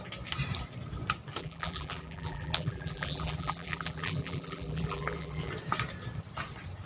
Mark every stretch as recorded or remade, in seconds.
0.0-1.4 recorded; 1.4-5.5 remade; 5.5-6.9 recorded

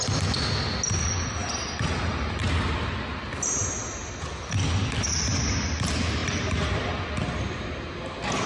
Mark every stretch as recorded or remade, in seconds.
0.0-1.4 recorded; 1.4-2.4 remade; 2.4-6.2 recorded; 6.2-6.9 remade; 6.9-8.5 recorded

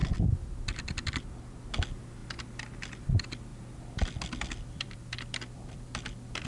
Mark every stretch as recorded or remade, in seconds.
0.0-2.2 remade; 2.2-3.0 recorded; 3.0-6.5 remade